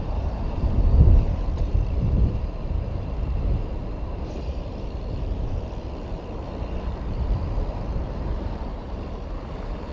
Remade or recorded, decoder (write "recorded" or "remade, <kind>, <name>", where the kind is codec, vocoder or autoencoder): remade, vocoder, BigVGAN v2